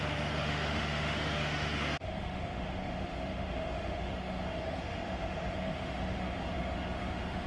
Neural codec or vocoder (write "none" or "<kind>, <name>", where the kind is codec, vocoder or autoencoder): autoencoder, DAC-VAE